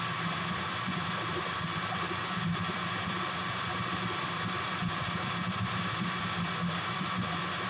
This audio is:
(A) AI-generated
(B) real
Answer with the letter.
A